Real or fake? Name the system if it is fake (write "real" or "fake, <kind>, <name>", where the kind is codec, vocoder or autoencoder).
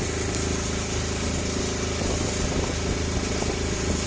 real